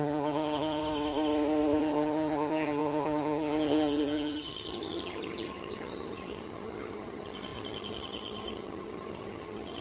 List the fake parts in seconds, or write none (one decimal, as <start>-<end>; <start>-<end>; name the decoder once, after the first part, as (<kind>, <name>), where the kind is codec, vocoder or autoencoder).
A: 0.0-0.8 (vocoder, HiFi-GAN); 1.8-9.8